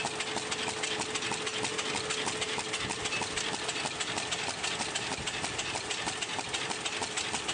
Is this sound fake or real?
real